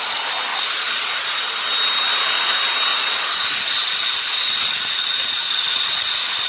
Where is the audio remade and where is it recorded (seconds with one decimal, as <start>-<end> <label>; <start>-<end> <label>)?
0.0-0.5 recorded; 0.5-1.4 remade; 1.4-2.9 recorded; 2.9-6.5 remade